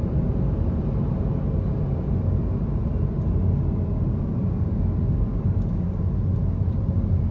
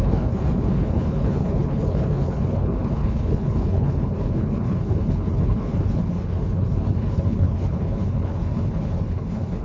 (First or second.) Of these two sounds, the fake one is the second